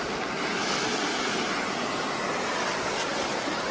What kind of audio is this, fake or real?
real